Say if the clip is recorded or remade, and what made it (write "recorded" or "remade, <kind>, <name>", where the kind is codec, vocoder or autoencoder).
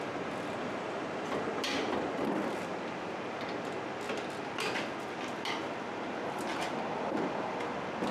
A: recorded